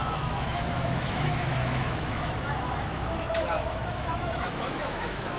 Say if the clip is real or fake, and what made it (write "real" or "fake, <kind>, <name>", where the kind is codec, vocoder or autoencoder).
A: fake, autoencoder, DAC-VAE